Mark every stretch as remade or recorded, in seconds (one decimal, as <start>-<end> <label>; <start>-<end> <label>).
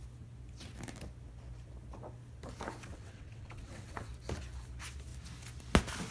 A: 0.0-2.9 recorded; 2.9-4.1 remade; 4.1-6.1 recorded